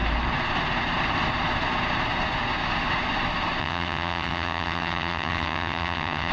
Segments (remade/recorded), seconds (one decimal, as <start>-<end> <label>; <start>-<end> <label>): 0.0-3.6 recorded; 3.6-6.3 remade